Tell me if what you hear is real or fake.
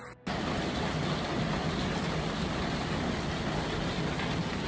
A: real